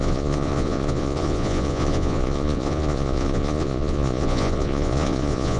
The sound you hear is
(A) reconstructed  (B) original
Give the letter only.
A